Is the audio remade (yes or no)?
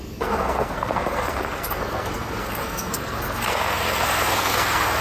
yes